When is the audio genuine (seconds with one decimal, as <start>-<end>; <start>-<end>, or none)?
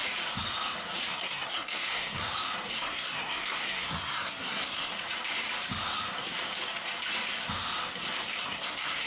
0.0-1.1; 2.2-2.7; 4.9-8.4